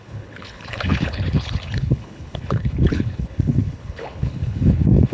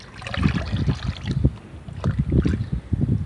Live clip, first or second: second